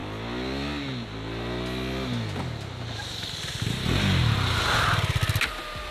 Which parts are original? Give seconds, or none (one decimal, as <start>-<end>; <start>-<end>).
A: 0.0-5.9